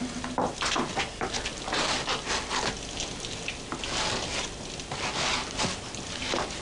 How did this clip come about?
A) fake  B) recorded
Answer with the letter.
B